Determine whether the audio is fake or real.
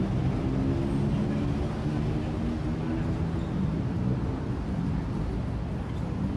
real